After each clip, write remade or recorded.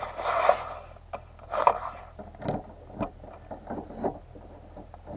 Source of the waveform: recorded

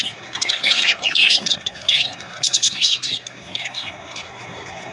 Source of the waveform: remade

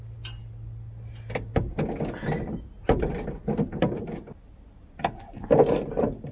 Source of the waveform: recorded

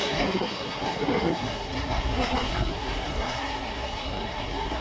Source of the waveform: remade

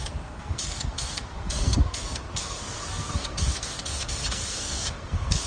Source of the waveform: remade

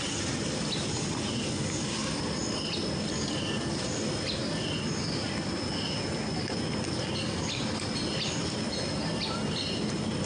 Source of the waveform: recorded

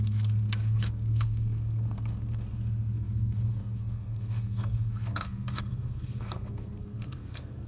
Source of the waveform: remade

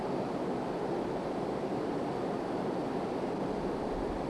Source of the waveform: recorded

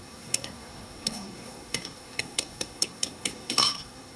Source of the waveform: remade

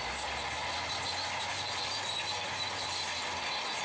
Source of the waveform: recorded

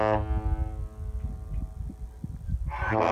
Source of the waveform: recorded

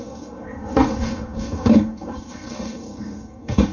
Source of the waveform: remade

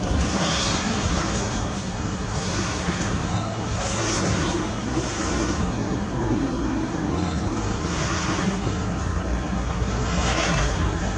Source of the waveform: remade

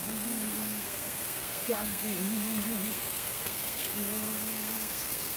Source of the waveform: remade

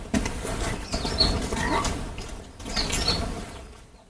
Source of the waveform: recorded